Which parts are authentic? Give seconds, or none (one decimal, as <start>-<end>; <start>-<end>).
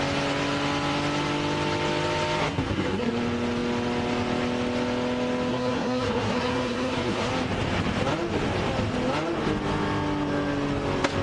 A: 0.0-2.4; 3.1-5.5; 7.3-11.2